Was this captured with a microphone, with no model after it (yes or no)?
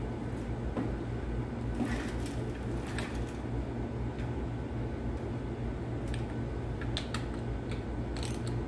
yes